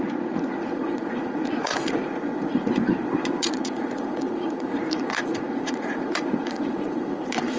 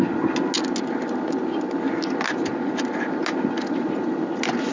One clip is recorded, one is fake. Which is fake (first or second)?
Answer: first